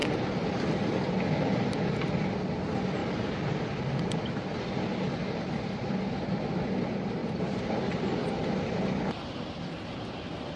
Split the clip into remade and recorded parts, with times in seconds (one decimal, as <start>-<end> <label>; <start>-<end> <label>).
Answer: 0.0-2.5 remade; 2.5-3.0 recorded; 3.0-4.4 remade; 4.4-7.2 recorded; 7.2-8.3 remade; 8.3-9.2 recorded; 9.2-9.8 remade; 9.8-10.6 recorded